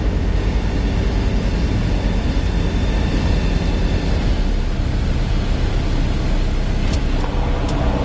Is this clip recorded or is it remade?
recorded